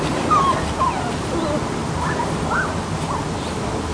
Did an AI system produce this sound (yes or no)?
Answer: no